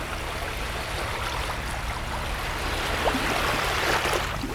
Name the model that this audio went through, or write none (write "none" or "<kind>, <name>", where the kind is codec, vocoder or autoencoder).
none